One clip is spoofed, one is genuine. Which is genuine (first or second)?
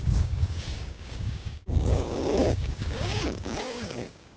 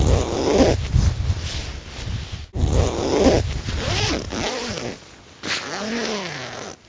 second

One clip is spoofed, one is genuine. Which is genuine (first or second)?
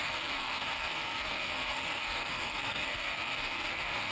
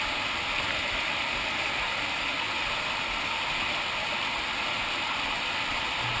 second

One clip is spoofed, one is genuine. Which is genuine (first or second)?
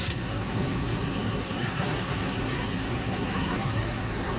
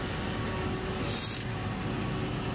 second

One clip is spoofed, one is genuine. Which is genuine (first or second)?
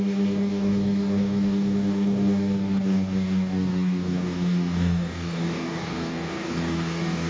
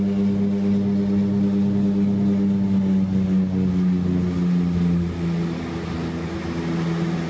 second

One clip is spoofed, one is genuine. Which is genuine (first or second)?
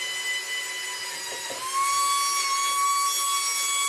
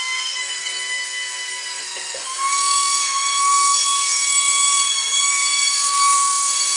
first